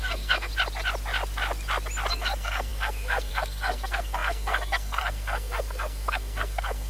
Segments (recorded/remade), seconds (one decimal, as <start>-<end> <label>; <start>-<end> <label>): 0.0-0.5 remade; 0.5-2.1 recorded; 2.1-6.9 remade